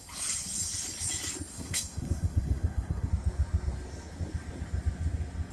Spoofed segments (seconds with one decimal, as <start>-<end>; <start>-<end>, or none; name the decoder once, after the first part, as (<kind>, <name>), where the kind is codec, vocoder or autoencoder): 1.5-3.1 (codec, SNAC)